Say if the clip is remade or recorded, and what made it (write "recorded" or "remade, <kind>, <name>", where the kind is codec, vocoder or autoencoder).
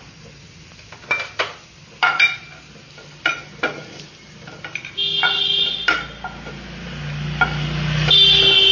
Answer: recorded